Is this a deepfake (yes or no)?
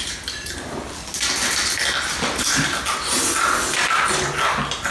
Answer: no